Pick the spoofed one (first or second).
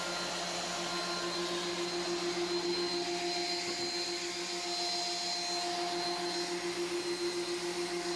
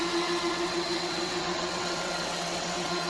second